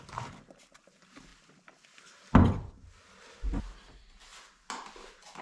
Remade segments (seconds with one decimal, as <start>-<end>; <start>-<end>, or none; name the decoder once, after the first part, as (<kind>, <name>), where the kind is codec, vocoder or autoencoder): 0.0-1.3 (vocoder, BigVGAN v2); 3.9-4.3; 4.9-5.4